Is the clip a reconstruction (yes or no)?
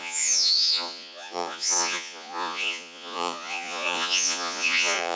yes